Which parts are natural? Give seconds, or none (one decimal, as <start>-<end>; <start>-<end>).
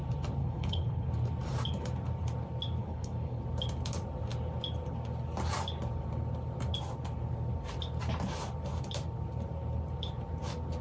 0.0-0.4; 1.1-2.8; 3.4-10.8